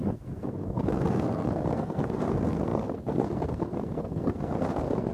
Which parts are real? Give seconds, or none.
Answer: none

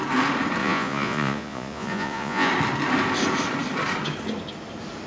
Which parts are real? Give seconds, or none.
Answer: 0.0-0.6; 2.5-5.1

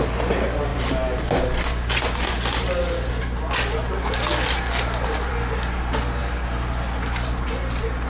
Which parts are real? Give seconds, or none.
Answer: 0.0-8.1